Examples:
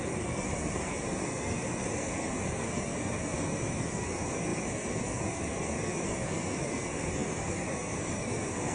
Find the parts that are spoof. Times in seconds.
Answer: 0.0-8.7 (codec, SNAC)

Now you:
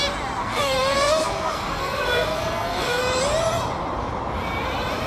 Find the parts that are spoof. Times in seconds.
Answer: 0.4-3.0 (codec, SNAC)

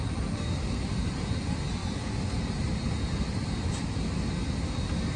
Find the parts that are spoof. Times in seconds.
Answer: none

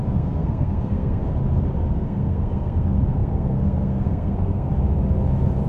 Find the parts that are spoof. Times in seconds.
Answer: 0.0-1.2 (codec, SNAC); 1.9-4.7